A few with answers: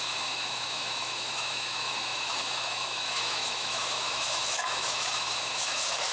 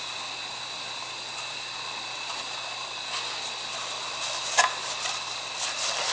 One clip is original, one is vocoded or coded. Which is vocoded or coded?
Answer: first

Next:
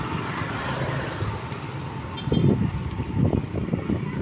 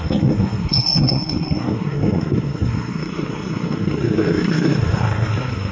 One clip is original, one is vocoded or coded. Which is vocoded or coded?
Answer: second